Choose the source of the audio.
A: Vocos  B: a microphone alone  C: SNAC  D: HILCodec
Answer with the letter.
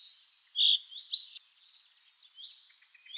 B